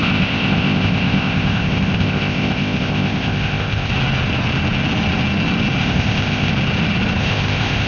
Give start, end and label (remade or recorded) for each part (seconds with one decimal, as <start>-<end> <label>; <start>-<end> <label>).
0.0-3.9 remade; 3.9-5.8 recorded; 5.8-6.5 remade; 6.5-7.2 recorded; 7.2-7.9 remade